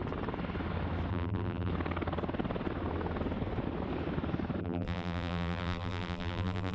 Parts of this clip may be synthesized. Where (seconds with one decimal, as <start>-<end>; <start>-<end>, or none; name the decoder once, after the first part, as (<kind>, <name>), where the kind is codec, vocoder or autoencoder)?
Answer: 1.1-1.7 (vocoder, BigVGAN v2); 4.6-6.7